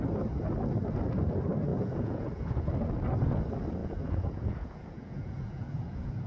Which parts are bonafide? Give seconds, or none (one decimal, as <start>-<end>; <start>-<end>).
0.0-1.7; 2.7-3.8

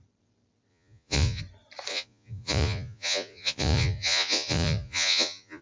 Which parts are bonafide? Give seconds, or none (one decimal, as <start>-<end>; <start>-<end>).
0.0-0.7; 1.4-1.9

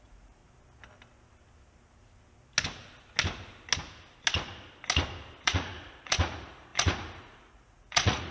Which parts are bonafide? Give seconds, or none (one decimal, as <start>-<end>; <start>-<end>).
0.4-5.4

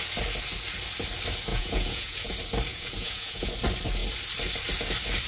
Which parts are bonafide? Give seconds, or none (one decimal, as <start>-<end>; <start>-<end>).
0.0-1.5; 2.3-2.7; 3.5-5.3

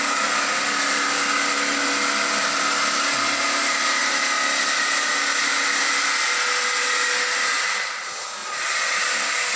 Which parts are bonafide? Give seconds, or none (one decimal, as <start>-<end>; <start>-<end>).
0.0-8.4; 9.1-9.6